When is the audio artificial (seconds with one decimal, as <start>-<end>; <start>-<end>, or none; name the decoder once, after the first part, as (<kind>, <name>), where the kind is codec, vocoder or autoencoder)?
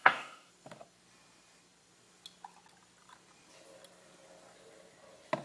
0.0-0.5 (codec, DAC)